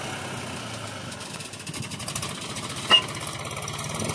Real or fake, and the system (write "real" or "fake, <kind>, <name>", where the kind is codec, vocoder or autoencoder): real